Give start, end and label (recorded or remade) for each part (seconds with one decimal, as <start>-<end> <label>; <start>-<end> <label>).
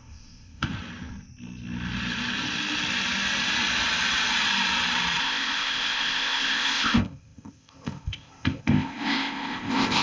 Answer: 0.0-0.7 remade; 0.7-5.2 recorded; 5.2-10.0 remade